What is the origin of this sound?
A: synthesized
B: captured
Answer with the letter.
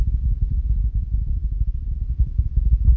B